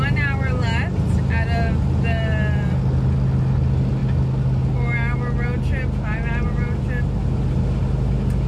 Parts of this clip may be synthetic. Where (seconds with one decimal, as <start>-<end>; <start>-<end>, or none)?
none